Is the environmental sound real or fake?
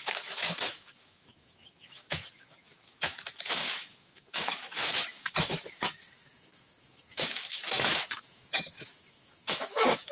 fake